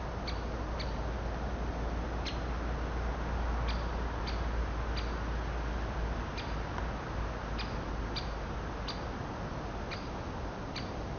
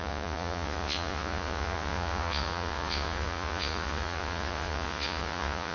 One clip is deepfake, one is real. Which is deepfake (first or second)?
second